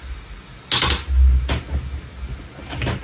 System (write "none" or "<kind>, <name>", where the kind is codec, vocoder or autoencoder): none